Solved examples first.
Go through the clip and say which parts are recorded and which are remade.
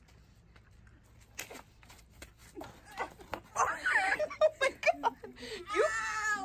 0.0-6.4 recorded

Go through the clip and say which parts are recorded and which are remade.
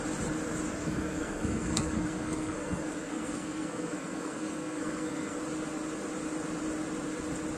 0.0-0.8 recorded; 0.8-5.4 remade; 5.4-7.6 recorded